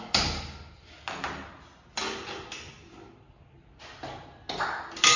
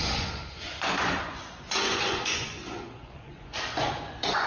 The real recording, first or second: first